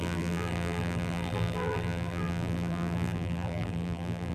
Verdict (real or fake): fake